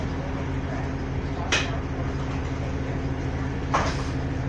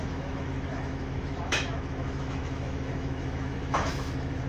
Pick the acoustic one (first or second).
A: first